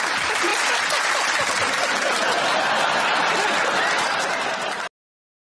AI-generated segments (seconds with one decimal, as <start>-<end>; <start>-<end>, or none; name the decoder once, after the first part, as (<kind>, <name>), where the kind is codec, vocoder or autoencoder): none